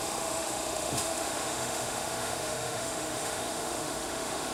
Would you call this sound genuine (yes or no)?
no